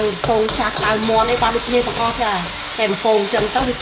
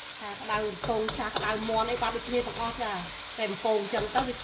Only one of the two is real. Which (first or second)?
second